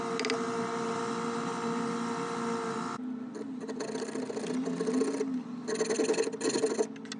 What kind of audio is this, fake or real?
real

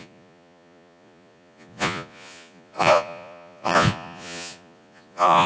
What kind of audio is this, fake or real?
fake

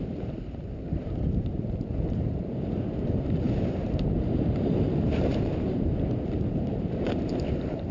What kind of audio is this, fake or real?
fake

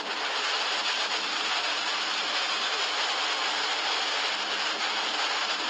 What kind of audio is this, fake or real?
real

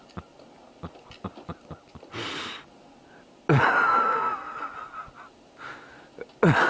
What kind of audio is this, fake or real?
real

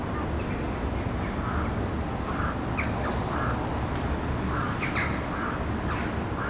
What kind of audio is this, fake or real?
real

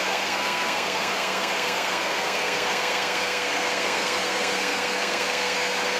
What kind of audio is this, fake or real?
fake